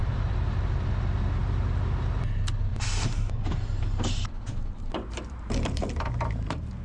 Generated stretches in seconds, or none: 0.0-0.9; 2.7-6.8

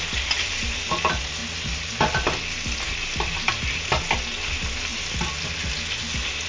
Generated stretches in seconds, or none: none

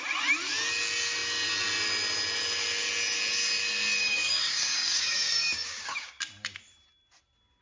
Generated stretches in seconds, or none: 4.0-6.2

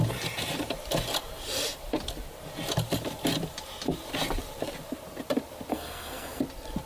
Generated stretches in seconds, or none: 5.7-6.4

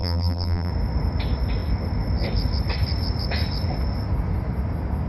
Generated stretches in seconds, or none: 0.0-0.7

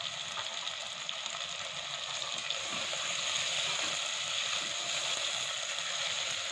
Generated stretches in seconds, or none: 2.4-3.2